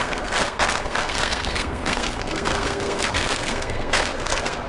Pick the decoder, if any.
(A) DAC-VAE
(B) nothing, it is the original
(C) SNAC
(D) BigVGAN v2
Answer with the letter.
C